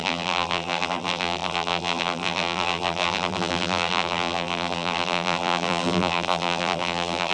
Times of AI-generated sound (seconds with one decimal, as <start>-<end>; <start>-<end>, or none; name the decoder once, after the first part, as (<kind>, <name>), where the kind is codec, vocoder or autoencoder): 0.0-7.3 (vocoder, BigVGAN v2)